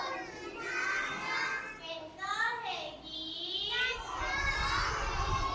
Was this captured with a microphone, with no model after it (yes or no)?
yes